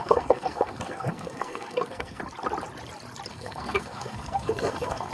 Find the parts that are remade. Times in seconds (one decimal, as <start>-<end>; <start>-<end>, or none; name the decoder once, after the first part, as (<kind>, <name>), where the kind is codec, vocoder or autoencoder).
0.0-2.2 (codec, SNAC); 3.3-5.1

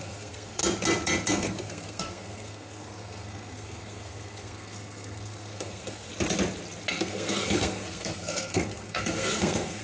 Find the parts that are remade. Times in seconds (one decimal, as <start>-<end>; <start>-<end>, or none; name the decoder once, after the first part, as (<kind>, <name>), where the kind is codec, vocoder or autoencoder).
0.0-0.6 (codec, SNAC); 1.3-6.1; 6.9-9.8